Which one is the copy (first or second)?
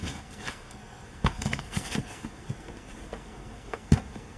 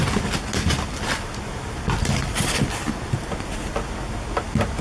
first